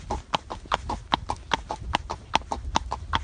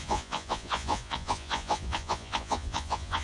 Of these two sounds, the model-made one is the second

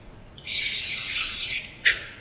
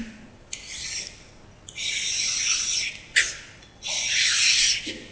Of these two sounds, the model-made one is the first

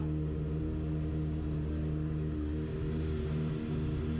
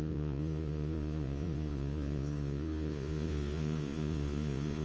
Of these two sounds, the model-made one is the second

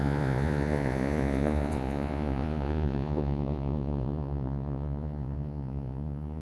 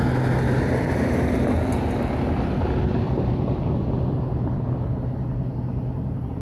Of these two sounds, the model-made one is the first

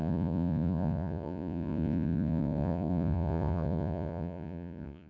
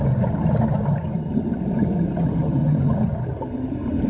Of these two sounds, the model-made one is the first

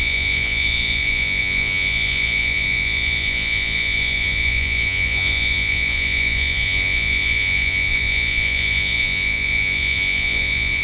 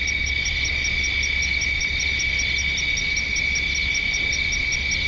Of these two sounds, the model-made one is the first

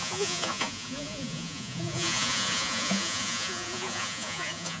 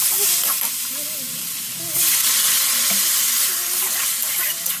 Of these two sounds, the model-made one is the first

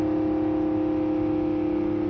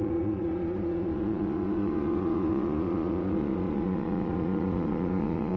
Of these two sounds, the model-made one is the second